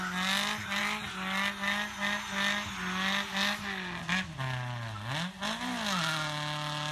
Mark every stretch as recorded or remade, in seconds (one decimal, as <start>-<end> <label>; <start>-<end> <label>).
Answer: 0.0-6.9 recorded